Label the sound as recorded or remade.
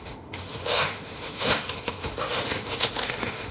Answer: remade